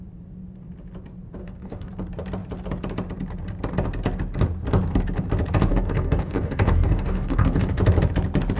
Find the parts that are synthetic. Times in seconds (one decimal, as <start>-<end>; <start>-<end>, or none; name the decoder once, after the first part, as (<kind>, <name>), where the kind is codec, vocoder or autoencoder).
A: 1.4-1.9 (codec, DAC); 5.7-7.8